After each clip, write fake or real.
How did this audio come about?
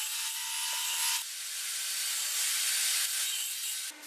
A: fake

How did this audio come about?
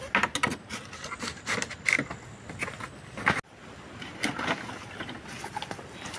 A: real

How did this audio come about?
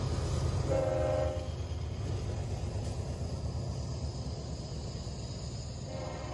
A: real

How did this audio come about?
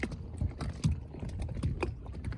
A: real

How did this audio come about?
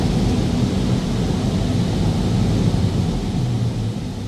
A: real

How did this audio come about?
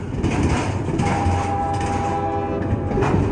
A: real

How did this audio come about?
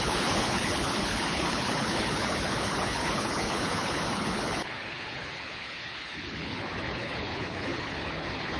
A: fake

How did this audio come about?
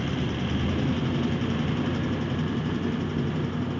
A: real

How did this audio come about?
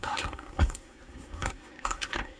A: fake